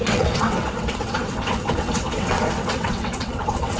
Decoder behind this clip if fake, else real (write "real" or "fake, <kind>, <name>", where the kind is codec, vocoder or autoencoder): fake, vocoder, WaveNeXt